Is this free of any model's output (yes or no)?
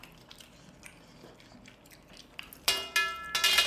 yes